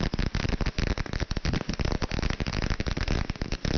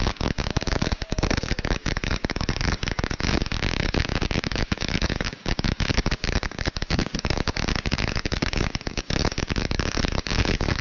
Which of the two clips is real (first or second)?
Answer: first